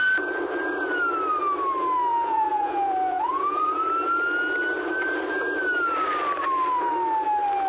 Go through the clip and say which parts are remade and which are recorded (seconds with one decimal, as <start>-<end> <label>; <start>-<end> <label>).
0.0-2.1 recorded; 2.1-3.9 remade; 3.9-7.7 recorded